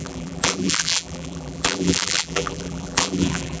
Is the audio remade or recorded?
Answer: remade